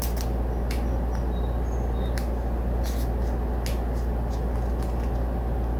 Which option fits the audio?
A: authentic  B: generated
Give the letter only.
A